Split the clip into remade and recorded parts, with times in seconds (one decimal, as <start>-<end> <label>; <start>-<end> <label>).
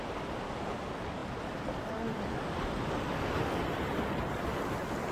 0.0-5.1 recorded